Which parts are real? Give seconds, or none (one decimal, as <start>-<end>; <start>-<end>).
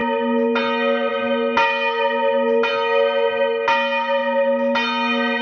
0.0-5.4